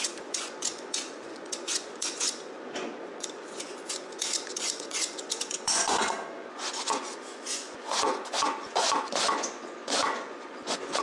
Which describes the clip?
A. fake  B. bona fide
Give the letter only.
A